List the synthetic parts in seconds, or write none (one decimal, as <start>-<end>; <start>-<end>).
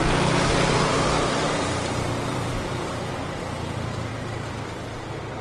0.9-4.1